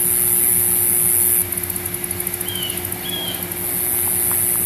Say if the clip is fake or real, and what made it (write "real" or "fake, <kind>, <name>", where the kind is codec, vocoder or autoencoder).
real